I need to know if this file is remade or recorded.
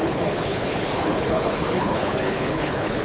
remade